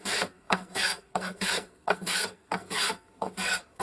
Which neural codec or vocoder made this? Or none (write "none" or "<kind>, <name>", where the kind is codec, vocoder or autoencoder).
codec, SNAC